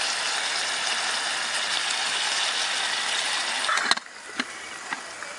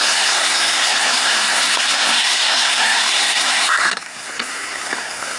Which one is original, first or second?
first